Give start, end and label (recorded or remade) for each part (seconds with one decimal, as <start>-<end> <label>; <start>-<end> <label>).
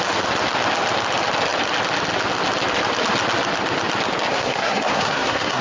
0.0-4.3 recorded; 4.3-5.6 remade